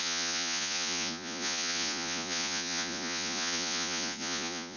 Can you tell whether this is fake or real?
fake